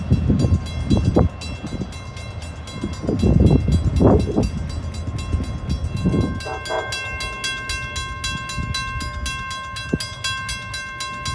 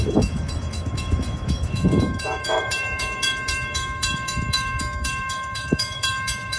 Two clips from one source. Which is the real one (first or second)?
first